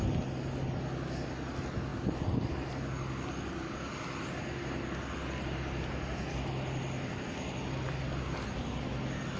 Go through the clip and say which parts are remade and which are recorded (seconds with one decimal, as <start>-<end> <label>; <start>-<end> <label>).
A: 0.0-1.9 recorded; 1.9-2.7 remade; 2.7-9.4 recorded